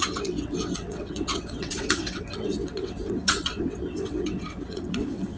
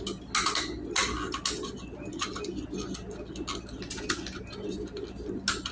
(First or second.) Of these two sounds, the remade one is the first